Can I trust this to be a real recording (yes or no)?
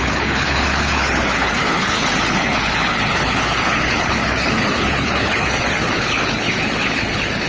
no